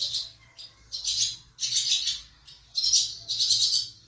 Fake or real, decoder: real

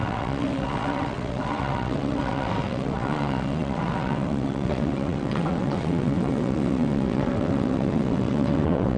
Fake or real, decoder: fake, vocoder, WaveNeXt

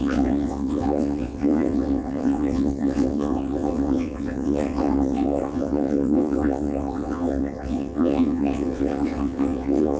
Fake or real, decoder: fake, vocoder, WaveNeXt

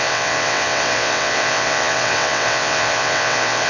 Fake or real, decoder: fake, vocoder, WaveNeXt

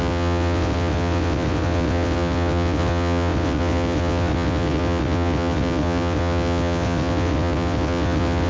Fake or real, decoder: fake, vocoder, WaveNeXt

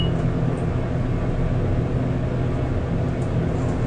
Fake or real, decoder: real